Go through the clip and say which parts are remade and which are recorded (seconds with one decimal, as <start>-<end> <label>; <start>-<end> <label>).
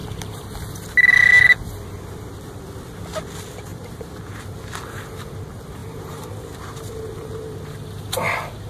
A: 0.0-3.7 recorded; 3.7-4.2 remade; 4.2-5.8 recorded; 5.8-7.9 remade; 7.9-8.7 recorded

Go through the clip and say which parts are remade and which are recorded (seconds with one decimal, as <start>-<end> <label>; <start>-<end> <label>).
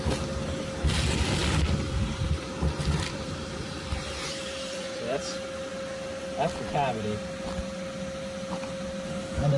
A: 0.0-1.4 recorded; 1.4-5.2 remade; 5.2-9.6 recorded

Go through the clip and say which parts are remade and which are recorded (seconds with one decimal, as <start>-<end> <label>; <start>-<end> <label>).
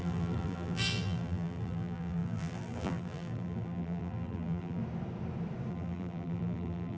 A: 0.0-4.8 remade; 4.8-5.7 recorded; 5.7-7.0 remade